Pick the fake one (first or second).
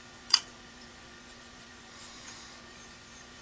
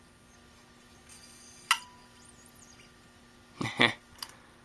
first